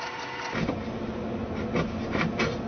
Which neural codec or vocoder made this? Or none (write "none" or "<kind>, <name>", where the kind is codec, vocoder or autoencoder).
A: none